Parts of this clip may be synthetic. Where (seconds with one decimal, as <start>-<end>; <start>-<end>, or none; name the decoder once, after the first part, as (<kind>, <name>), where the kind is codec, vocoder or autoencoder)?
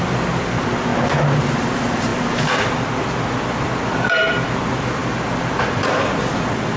0.0-0.9 (vocoder, BigVGAN v2); 1.4-5.0; 5.9-6.8